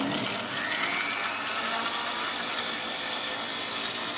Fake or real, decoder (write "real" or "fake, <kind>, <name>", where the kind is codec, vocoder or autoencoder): real